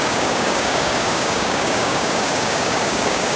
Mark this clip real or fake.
fake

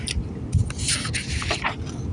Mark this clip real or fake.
real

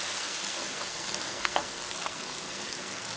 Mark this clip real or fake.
fake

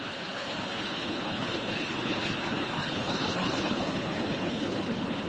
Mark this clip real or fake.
fake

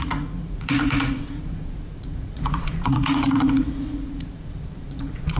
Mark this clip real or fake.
fake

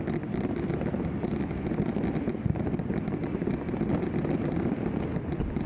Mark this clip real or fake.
real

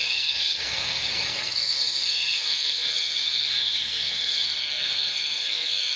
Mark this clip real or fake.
fake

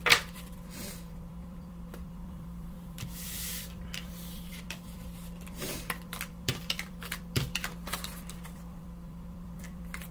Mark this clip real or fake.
fake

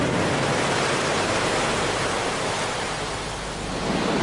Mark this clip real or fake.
real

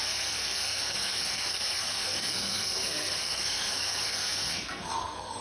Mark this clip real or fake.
fake